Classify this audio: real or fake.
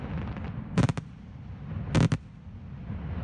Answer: real